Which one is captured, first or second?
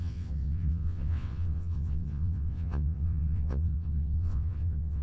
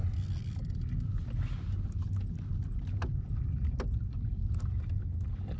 second